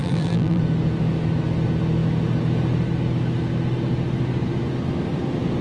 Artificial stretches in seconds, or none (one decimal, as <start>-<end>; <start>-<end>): 0.0-0.6